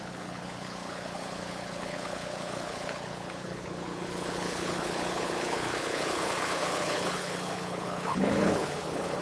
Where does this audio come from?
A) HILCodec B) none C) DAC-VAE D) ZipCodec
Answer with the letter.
A